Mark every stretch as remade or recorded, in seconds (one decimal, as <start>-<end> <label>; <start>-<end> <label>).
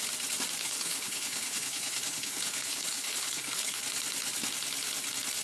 0.0-0.6 recorded; 0.6-3.8 remade; 3.8-5.4 recorded